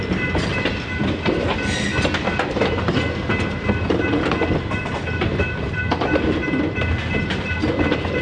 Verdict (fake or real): real